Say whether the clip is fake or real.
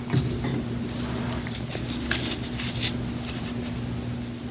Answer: real